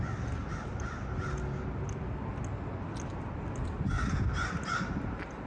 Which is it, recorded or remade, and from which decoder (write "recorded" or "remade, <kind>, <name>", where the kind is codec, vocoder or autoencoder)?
recorded